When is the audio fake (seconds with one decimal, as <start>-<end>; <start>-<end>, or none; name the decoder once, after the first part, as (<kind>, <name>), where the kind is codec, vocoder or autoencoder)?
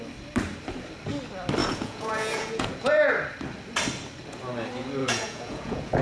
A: 1.6-3.1 (vocoder, Vocos); 5.0-6.0